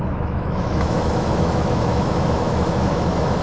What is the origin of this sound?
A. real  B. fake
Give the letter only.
B